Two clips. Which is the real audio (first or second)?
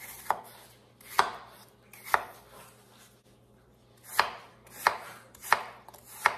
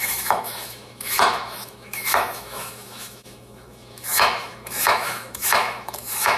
first